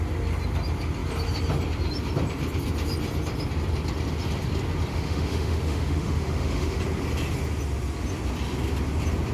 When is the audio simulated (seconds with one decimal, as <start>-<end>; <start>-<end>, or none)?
4.9-6.8